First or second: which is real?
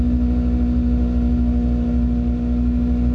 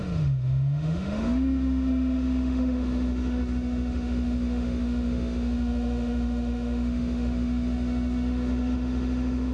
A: first